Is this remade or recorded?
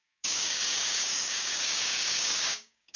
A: remade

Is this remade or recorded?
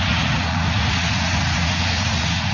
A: remade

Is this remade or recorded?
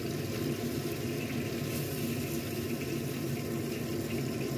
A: recorded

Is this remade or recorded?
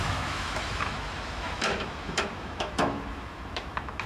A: remade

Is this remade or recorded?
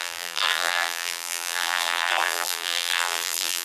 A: remade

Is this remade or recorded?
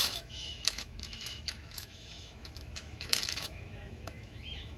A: remade